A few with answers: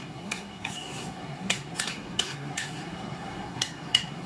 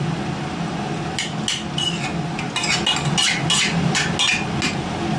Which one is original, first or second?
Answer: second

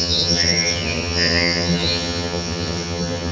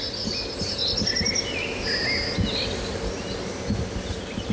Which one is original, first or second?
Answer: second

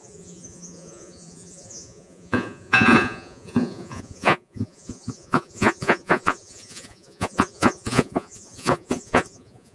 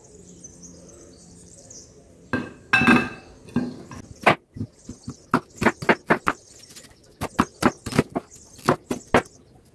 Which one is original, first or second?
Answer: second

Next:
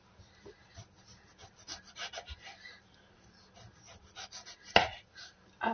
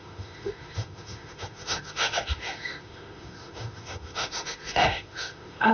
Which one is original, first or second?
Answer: first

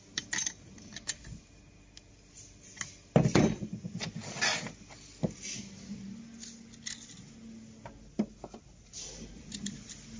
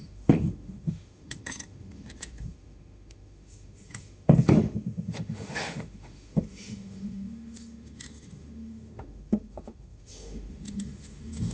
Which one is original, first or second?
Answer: first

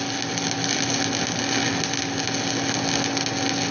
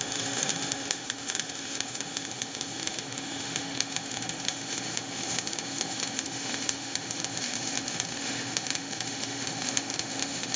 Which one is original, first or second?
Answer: first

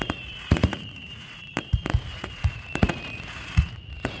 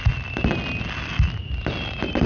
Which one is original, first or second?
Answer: second